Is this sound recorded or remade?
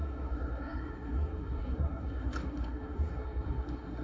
remade